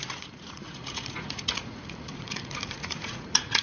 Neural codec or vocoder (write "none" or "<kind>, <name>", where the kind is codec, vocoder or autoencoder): vocoder, Vocos